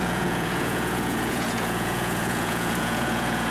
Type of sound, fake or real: fake